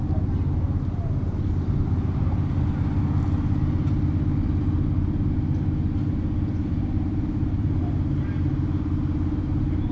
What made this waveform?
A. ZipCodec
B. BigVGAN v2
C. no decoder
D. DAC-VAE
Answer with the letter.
C